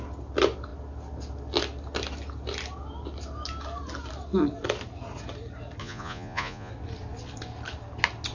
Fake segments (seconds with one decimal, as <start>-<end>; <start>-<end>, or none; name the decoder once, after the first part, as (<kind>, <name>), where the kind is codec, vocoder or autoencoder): 5.8-6.7 (vocoder, Vocos)